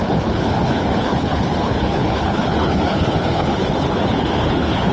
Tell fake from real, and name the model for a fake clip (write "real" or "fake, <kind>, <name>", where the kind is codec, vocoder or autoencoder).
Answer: fake, codec, HILCodec